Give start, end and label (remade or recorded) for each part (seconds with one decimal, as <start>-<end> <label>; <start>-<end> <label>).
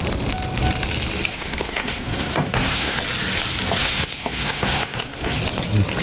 0.0-1.3 recorded; 1.3-3.0 remade; 3.0-3.8 recorded; 3.8-5.4 remade; 5.4-6.0 recorded